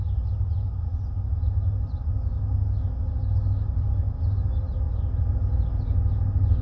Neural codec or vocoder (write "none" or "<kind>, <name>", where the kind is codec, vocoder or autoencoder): none